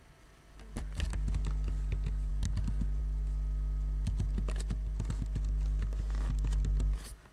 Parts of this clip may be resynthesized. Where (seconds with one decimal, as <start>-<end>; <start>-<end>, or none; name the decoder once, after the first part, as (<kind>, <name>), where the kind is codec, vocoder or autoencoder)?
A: none